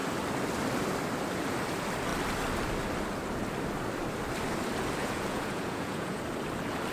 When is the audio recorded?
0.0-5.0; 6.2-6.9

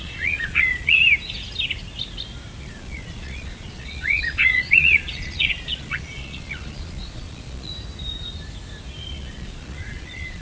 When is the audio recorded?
1.0-2.6; 7.7-9.1

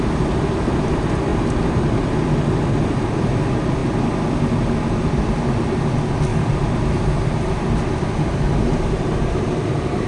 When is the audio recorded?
0.0-1.3; 2.1-6.3

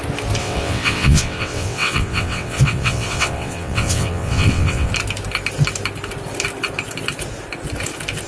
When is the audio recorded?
0.0-0.4; 4.9-8.3